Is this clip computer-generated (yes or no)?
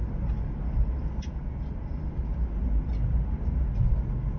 no